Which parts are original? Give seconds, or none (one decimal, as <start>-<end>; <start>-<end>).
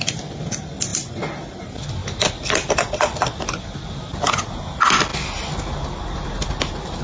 0.0-7.0